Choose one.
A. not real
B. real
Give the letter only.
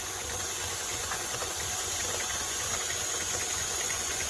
A